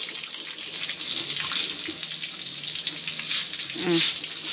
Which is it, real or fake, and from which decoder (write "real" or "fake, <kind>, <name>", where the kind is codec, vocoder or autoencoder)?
real